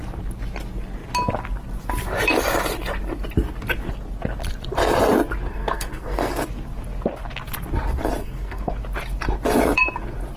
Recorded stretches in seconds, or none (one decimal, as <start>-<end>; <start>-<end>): 0.0-5.5; 6.3-8.2; 8.7-10.4